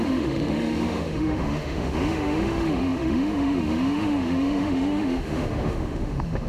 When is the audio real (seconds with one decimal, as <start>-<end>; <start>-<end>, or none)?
none